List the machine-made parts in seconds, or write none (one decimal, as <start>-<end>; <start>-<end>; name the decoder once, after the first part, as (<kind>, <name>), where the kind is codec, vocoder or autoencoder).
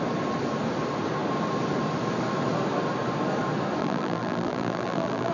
3.8-5.3 (vocoder, BigVGAN v2)